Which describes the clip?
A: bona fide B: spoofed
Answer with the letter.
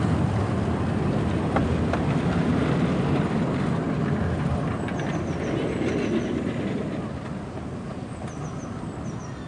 A